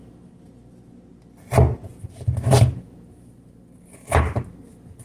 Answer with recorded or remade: recorded